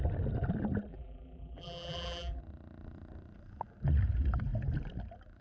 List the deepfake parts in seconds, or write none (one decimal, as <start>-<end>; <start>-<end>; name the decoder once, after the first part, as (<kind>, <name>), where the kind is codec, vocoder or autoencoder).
0.9-2.4 (vocoder, BigVGAN v2)